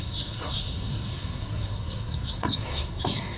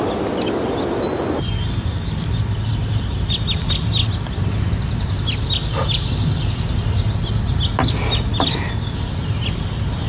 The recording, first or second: second